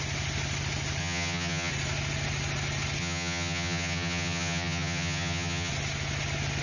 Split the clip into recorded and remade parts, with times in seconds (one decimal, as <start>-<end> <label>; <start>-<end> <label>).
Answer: 0.0-1.0 recorded; 1.0-1.7 remade; 1.7-3.0 recorded; 3.0-5.7 remade; 5.7-6.6 recorded